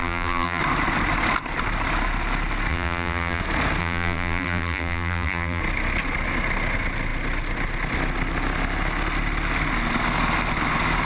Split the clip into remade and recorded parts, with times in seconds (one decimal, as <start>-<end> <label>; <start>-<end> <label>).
0.0-0.6 remade; 0.6-2.7 recorded; 2.7-3.4 remade; 3.4-3.8 recorded; 3.8-5.6 remade; 5.6-11.1 recorded